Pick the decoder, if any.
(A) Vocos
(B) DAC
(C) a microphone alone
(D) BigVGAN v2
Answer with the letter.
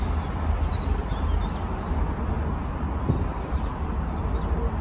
C